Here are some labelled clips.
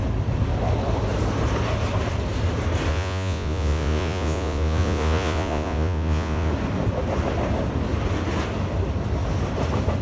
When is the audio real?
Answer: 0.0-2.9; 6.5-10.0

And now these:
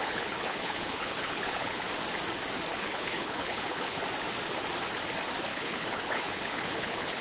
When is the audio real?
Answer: 1.8-2.7; 4.0-5.5

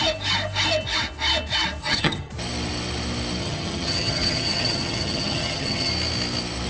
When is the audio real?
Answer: 0.0-1.8; 2.3-3.4; 5.9-6.7

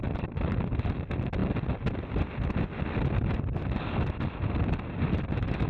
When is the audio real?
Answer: 0.0-5.7

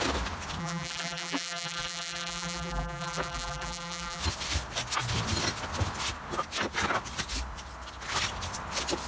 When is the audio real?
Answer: 0.0-0.6; 4.2-9.1

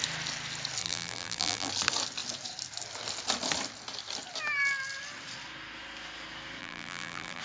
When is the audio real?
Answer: 0.0-0.8; 1.7-6.6

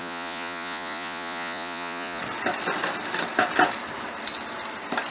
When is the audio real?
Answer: 2.2-5.1

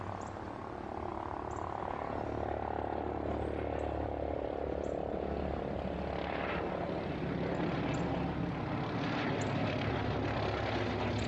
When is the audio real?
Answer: 0.0-11.3